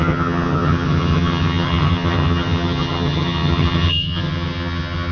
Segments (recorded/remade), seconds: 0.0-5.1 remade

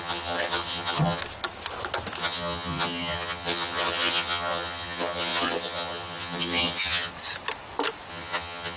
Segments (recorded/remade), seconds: 0.0-1.2 remade; 1.2-2.2 recorded; 2.2-7.1 remade; 7.1-8.1 recorded; 8.1-8.8 remade